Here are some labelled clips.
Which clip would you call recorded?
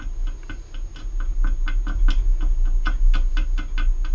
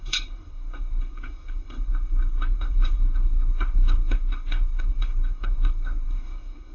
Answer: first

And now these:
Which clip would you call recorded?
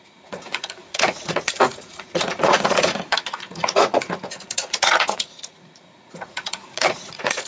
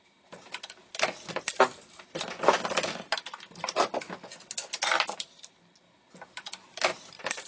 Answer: second